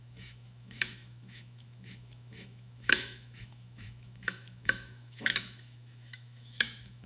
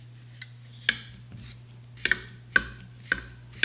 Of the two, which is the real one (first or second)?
second